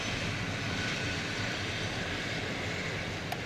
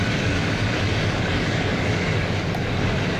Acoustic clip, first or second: first